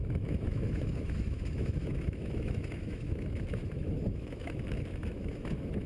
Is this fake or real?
fake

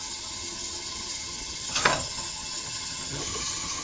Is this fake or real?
fake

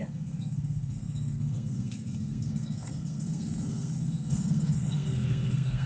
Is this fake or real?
fake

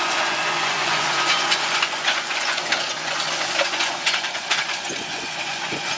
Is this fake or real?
fake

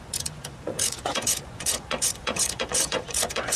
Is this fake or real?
fake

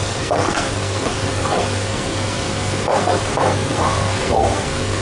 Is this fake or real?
fake